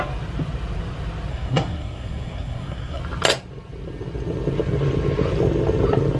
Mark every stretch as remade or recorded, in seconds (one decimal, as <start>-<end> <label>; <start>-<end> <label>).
0.0-1.3 recorded; 1.3-3.0 remade; 3.0-6.2 recorded